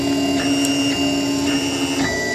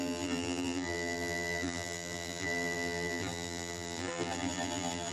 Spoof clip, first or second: second